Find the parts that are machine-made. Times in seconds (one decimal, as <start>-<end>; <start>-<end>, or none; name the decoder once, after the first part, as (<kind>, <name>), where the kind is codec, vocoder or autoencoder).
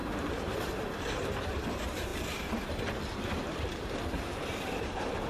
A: 0.0-5.3 (vocoder, BigVGAN v2)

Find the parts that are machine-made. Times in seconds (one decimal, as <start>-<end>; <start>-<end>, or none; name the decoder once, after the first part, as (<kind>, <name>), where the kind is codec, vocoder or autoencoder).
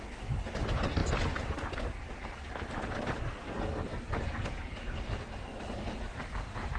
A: none